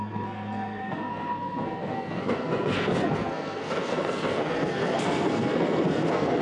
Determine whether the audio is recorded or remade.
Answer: remade